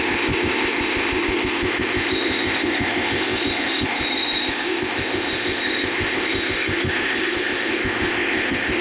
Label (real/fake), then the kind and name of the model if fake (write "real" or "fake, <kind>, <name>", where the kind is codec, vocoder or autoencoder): fake, codec, ZipCodec